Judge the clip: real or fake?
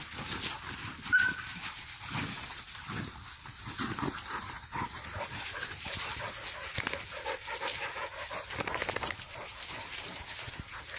real